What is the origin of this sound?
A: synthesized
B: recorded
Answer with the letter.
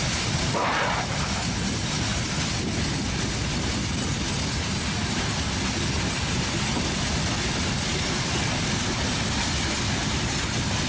B